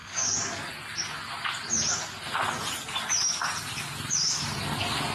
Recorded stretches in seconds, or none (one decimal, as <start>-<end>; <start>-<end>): 0.7-5.1